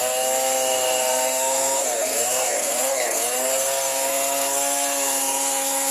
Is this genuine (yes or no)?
no